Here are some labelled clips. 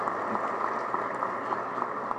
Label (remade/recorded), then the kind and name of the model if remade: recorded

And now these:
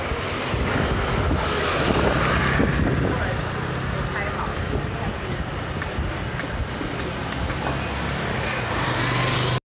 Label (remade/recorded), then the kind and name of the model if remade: recorded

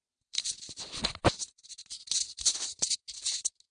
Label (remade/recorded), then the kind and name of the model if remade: recorded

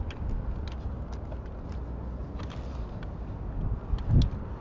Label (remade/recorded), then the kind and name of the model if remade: recorded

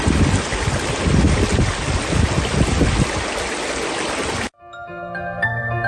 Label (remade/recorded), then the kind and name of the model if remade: recorded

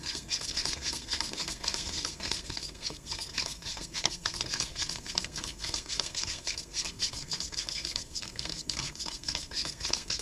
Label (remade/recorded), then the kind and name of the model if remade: remade, codec, SNAC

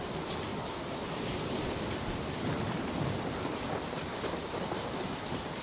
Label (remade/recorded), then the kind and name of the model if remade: remade, vocoder, BigVGAN v2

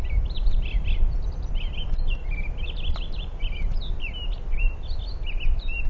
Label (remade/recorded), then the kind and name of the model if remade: remade, vocoder, BigVGAN v2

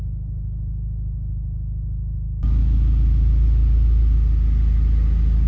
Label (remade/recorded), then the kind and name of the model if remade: recorded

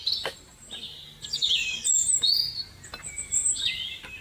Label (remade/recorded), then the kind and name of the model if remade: recorded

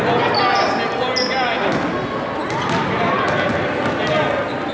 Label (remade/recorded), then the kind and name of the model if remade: recorded